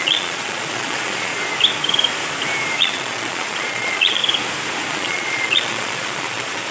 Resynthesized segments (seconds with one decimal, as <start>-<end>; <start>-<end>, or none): 0.0-1.3; 2.8-4.2; 4.9-6.7